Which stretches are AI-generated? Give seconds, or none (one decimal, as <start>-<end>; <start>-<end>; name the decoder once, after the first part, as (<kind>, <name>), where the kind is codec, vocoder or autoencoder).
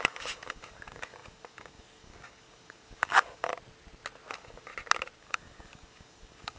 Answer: 0.0-3.5 (codec, DAC); 4.3-4.7; 5.2-6.6